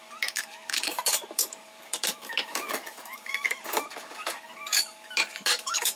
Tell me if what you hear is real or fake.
fake